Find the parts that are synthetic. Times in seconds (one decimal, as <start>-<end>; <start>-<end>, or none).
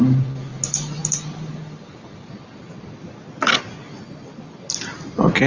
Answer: none